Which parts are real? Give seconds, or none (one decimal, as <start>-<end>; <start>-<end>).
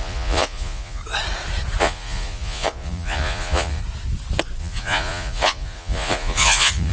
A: 1.0-1.8; 3.8-4.6